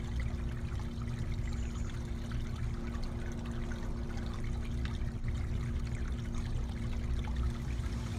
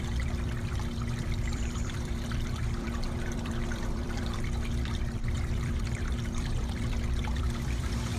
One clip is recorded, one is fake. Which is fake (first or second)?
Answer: second